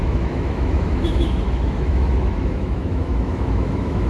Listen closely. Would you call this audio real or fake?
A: fake